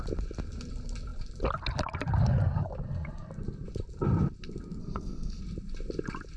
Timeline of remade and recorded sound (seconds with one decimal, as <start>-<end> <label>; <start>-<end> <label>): 0.0-4.8 recorded; 4.8-5.4 remade; 5.4-6.4 recorded